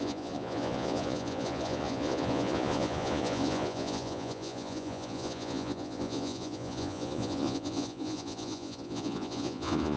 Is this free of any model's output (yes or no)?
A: no